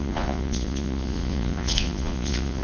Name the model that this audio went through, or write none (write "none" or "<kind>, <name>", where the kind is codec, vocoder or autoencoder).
vocoder, Vocos